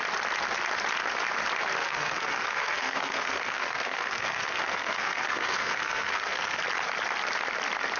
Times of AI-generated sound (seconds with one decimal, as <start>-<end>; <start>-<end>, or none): 1.8-6.6